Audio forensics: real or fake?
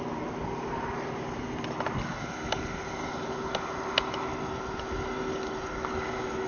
real